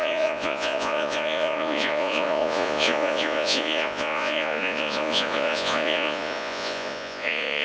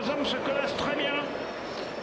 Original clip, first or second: second